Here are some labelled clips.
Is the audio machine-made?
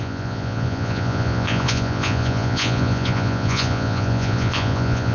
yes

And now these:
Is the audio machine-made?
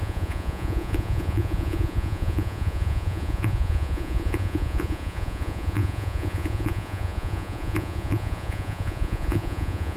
yes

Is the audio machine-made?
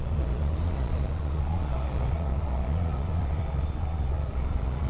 yes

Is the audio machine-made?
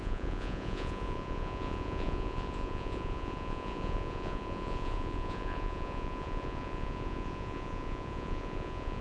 yes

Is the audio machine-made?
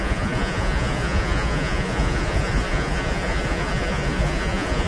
yes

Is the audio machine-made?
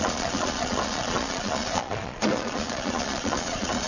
yes